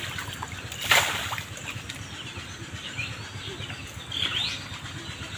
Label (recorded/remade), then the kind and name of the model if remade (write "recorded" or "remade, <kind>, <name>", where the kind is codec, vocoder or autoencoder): recorded